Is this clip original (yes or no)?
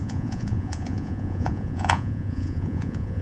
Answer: no